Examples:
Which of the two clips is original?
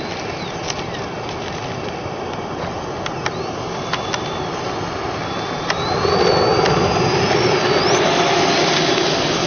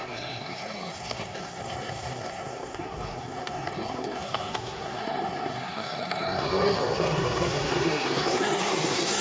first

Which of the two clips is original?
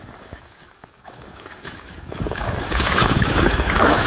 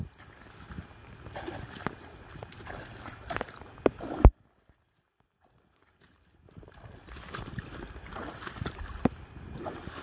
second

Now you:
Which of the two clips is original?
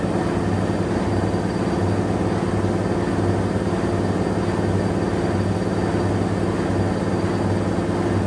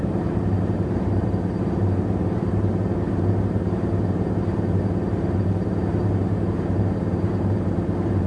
first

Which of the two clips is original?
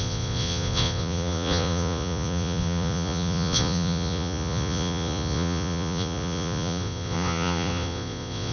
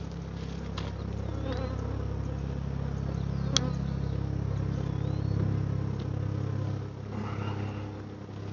second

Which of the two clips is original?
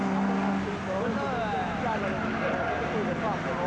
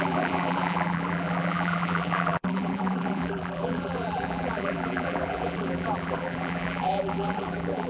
first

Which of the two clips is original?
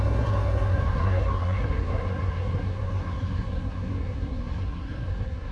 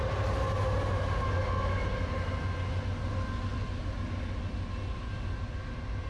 second